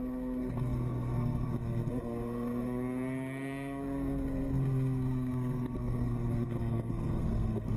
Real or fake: fake